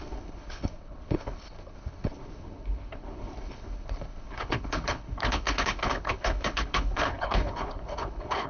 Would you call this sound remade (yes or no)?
yes